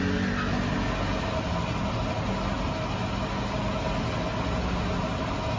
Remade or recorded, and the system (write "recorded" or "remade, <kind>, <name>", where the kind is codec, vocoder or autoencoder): recorded